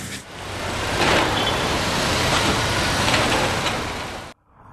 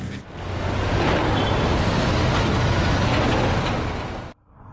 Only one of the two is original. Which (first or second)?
second